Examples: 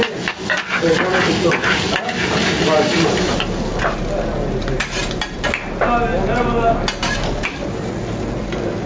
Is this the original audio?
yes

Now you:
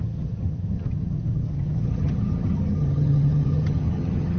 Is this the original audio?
no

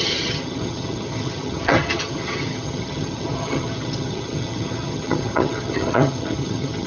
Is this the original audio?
no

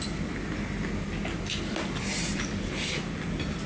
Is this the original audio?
yes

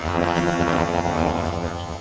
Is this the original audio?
no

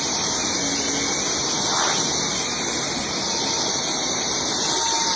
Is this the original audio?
yes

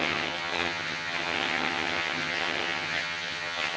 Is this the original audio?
no